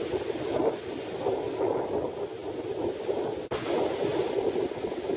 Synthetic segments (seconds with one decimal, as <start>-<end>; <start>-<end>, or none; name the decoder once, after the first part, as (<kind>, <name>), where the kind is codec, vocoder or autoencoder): none